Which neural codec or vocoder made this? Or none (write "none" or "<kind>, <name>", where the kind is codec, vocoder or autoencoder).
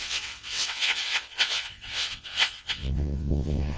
vocoder, WaveNeXt